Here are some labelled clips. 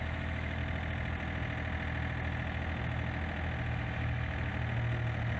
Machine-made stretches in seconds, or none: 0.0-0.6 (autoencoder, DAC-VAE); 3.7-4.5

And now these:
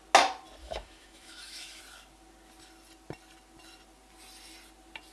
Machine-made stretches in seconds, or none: 0.6-1.8 (autoencoder, DAC-VAE)

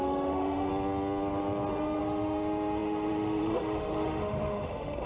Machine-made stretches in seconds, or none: 0.0-0.7 (autoencoder, DAC-VAE); 1.7-5.1

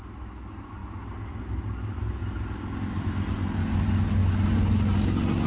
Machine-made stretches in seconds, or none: none